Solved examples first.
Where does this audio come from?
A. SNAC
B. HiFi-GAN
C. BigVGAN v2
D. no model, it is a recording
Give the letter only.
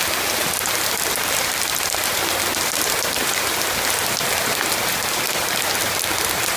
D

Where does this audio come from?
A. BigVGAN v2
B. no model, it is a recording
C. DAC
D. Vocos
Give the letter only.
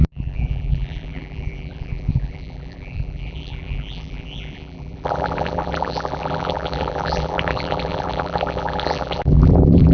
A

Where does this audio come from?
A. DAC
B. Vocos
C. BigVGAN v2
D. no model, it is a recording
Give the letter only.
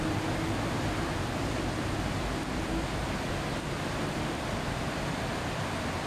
C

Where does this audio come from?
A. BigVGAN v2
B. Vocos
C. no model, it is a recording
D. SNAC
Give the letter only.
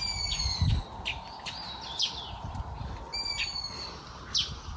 C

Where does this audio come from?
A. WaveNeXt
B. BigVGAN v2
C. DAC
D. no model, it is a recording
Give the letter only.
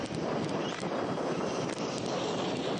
B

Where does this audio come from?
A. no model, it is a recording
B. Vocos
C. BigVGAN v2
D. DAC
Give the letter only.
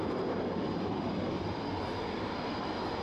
C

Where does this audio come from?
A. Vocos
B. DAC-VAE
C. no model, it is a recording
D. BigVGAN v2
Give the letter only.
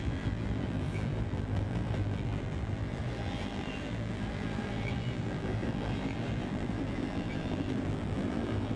D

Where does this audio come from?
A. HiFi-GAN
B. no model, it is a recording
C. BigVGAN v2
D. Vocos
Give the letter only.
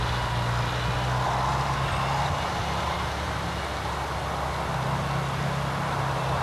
B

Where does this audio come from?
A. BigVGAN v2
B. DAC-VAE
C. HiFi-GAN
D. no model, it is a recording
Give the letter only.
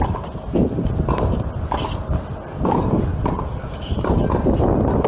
D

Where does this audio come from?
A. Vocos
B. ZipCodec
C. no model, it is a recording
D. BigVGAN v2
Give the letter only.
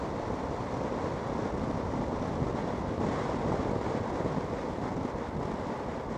C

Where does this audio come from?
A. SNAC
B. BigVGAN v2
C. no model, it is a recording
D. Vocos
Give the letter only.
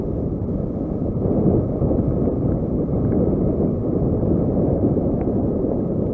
C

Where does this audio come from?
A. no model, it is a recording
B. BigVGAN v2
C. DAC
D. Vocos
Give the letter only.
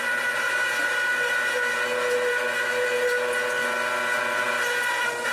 A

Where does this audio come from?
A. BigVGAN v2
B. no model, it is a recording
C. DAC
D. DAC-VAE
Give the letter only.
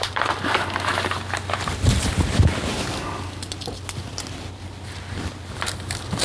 A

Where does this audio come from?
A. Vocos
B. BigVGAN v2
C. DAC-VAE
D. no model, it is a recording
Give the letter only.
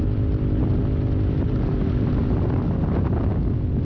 D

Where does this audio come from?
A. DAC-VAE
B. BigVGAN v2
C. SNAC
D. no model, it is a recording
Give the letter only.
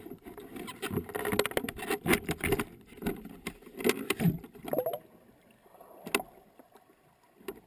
D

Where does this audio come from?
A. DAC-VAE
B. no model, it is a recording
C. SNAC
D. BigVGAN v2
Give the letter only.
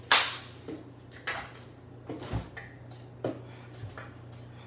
B